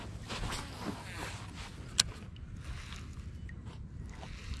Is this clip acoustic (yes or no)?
yes